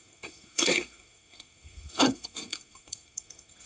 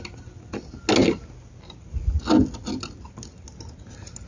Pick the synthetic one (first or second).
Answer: first